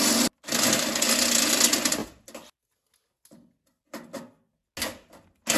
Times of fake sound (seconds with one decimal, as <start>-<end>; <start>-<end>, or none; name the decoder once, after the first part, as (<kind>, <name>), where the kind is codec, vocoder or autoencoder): none